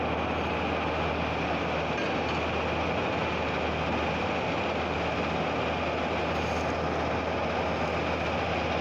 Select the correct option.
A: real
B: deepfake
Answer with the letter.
A